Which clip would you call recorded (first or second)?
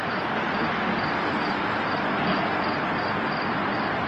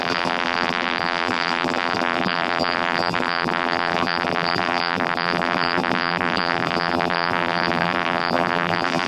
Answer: first